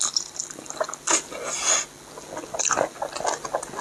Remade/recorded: recorded